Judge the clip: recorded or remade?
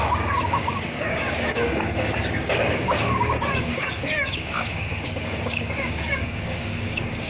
remade